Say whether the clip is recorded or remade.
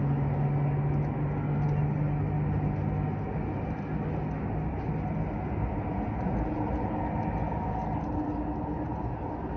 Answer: recorded